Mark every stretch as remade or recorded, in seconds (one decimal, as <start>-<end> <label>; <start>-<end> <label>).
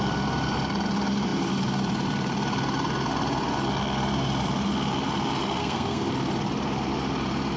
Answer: 0.0-5.6 recorded; 5.6-6.1 remade; 6.1-7.6 recorded